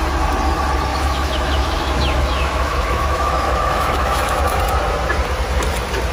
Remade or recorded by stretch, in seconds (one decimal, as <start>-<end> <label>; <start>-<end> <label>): 0.0-0.9 recorded; 0.9-4.6 remade; 4.6-6.1 recorded